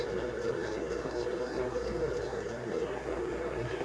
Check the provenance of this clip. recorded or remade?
remade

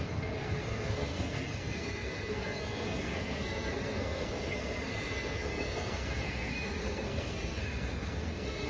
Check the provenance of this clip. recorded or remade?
remade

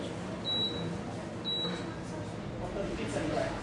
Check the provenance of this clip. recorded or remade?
recorded